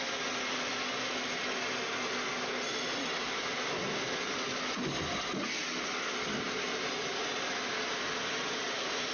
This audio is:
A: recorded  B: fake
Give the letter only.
A